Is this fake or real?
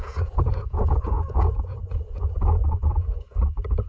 fake